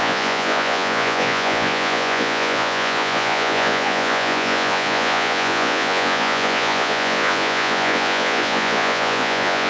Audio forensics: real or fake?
fake